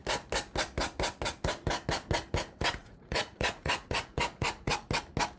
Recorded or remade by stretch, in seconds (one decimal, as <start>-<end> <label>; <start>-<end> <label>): 0.0-2.8 recorded; 2.8-4.9 remade; 4.9-5.4 recorded